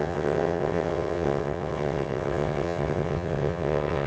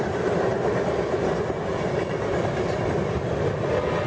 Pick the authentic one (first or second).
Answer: second